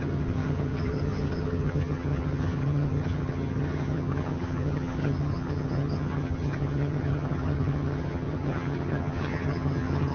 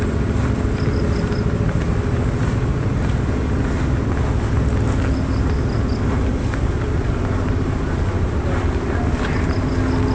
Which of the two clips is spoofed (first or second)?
first